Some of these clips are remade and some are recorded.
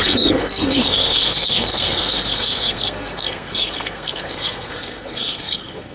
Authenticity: remade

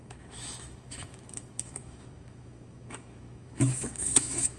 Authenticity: remade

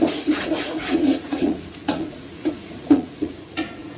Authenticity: remade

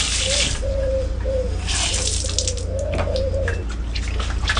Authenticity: recorded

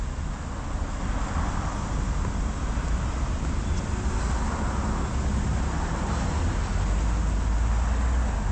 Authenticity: recorded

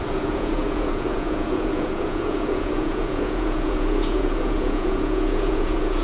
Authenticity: remade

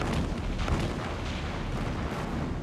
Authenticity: recorded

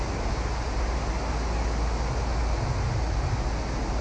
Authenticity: recorded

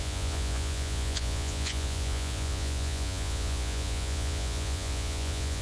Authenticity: remade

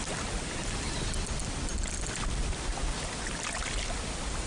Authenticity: recorded